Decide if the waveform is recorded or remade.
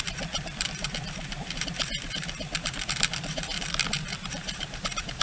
remade